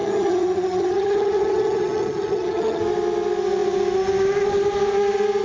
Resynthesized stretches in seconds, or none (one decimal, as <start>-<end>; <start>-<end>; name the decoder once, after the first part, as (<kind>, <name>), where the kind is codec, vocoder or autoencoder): 0.0-2.8 (vocoder, HiFi-GAN)